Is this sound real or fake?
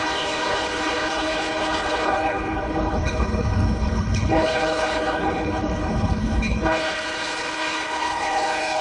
fake